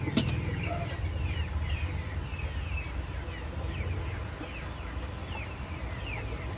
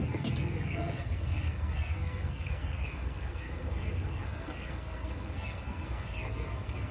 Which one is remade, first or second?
second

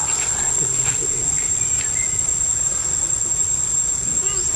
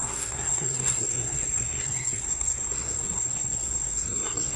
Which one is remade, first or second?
second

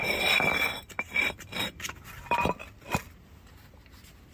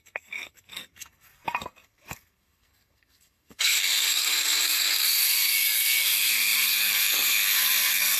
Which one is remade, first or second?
second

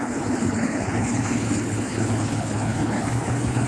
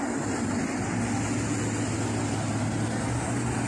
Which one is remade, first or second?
first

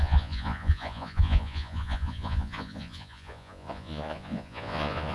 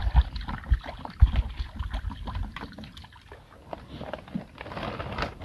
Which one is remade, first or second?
first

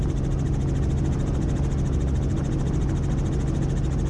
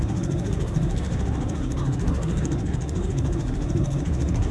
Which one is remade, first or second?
second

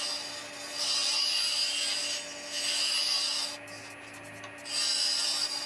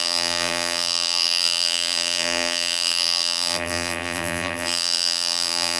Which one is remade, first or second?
second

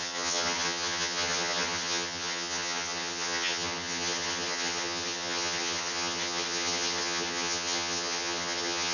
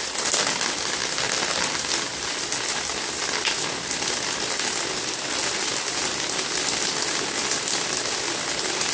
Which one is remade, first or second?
first